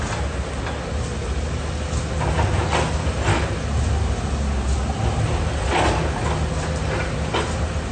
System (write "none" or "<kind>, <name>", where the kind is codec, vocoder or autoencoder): none